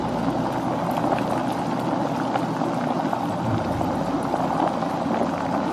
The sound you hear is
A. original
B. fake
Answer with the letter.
A